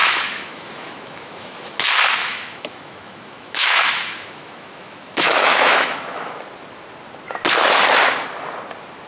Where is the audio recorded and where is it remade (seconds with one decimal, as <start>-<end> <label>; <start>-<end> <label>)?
0.0-1.8 remade; 1.8-2.2 recorded; 2.2-6.4 remade; 6.4-9.1 recorded